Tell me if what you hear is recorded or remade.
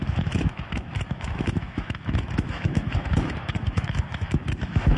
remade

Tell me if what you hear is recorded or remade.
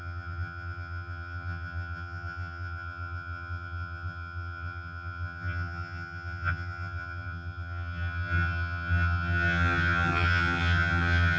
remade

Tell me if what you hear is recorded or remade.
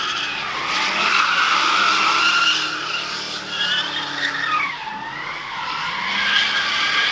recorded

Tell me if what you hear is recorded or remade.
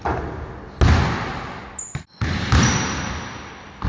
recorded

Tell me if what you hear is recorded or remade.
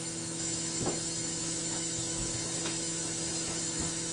remade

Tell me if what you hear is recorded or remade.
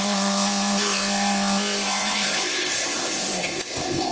remade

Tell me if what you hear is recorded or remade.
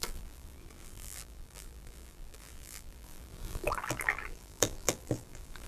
remade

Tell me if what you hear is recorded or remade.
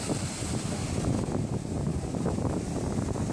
recorded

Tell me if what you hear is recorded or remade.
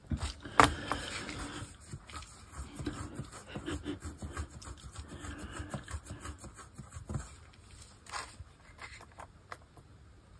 recorded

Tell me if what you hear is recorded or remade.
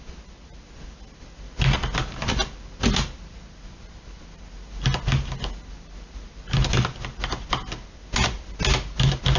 recorded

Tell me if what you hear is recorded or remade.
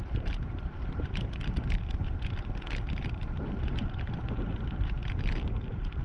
remade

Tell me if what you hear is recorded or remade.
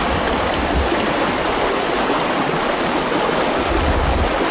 recorded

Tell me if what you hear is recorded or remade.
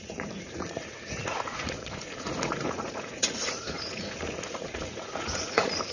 remade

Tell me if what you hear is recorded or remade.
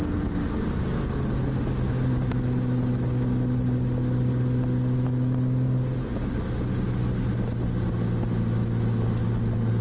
recorded